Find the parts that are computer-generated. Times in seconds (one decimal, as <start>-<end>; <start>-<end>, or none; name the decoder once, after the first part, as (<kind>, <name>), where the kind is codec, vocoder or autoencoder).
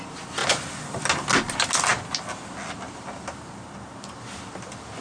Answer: none